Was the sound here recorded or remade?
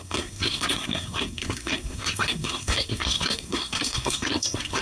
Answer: remade